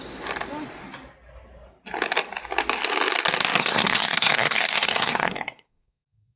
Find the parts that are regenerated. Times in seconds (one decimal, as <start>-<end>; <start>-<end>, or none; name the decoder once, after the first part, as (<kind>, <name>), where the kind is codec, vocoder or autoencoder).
3.6-6.4 (codec, SNAC)